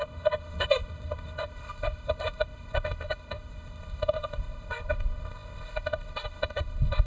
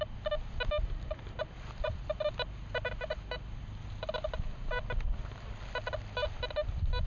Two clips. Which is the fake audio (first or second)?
first